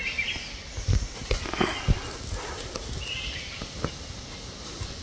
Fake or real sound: real